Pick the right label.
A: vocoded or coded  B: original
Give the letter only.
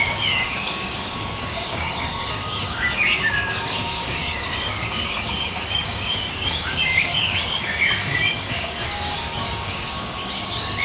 A